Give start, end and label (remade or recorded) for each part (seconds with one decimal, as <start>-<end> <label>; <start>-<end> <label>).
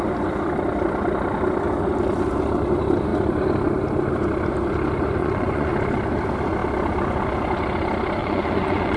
0.0-5.2 recorded; 5.2-5.7 remade; 5.7-8.2 recorded; 8.2-9.0 remade